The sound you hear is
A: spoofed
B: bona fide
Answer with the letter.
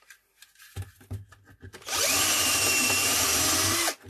B